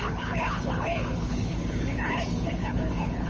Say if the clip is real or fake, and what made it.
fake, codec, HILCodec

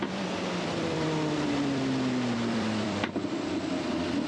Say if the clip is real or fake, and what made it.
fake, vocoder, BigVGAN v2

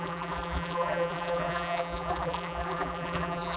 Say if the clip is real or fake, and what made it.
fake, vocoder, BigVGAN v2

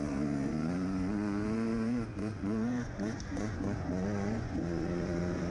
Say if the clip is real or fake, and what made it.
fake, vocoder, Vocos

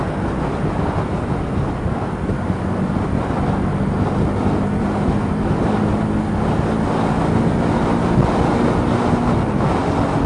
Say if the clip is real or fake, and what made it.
real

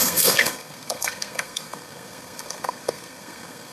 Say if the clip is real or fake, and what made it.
fake, codec, SNAC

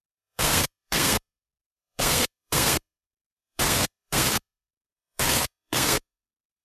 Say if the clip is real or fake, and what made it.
fake, codec, SNAC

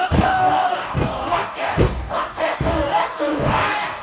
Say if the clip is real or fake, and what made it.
fake, codec, DAC